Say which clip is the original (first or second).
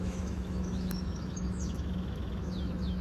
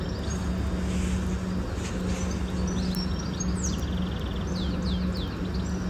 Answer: second